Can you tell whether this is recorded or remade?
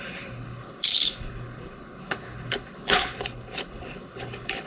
remade